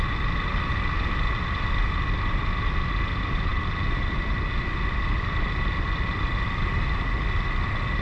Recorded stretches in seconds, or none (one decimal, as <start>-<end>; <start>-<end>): 0.0-8.0